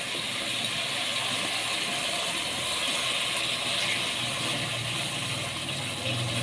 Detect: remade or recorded recorded